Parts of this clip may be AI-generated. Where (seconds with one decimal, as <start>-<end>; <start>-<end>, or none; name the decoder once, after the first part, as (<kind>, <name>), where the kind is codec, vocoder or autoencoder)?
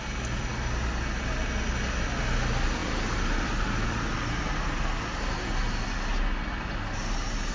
none